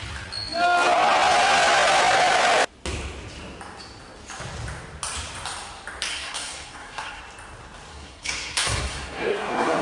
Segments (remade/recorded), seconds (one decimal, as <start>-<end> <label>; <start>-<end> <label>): 0.0-6.1 recorded; 6.1-7.2 remade; 7.2-7.9 recorded; 7.9-9.8 remade